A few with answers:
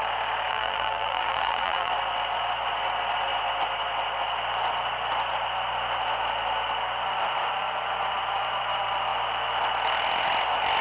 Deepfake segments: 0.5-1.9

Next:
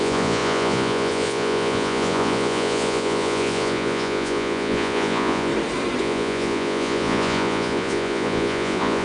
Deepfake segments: 0.0-5.5; 6.0-9.0